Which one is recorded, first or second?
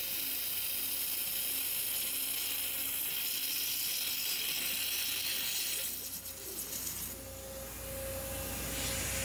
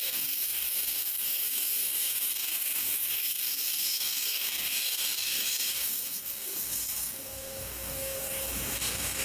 first